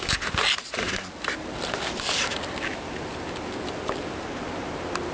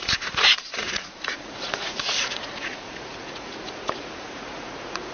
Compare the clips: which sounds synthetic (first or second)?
second